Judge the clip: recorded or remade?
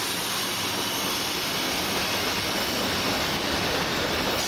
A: recorded